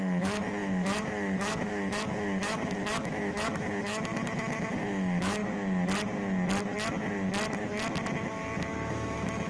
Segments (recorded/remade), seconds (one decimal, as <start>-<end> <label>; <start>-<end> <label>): 0.0-5.4 remade; 5.4-8.9 recorded; 8.9-9.5 remade